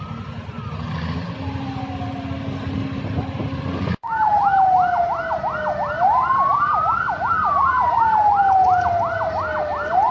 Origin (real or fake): real